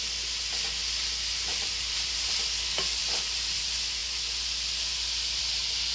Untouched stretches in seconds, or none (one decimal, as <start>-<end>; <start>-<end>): 0.0-1.5; 2.3-3.0; 3.6-5.9